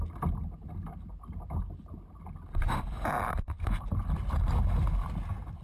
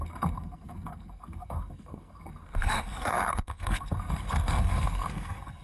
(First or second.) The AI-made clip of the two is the second